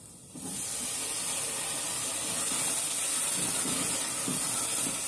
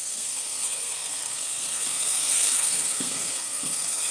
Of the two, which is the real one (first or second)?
first